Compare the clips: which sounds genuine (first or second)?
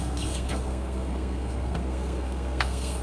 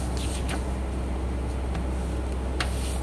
second